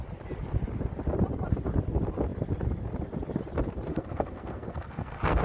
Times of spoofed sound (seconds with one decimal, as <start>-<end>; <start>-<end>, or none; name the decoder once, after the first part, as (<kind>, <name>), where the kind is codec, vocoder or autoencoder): 3.9-5.4 (codec, SNAC)